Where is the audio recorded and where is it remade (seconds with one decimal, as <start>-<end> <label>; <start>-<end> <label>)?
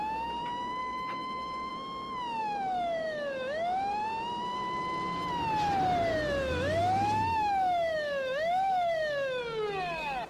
0.0-0.8 recorded; 0.8-1.7 remade; 1.7-2.4 recorded; 2.4-4.0 remade; 4.0-6.8 recorded; 6.8-9.4 remade; 9.4-10.3 recorded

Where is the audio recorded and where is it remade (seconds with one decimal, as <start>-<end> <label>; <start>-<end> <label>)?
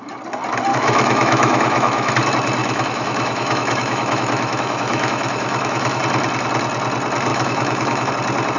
0.0-0.7 recorded; 0.7-2.1 remade; 2.1-2.6 recorded; 2.6-6.0 remade; 6.0-7.3 recorded; 7.3-8.1 remade; 8.1-8.6 recorded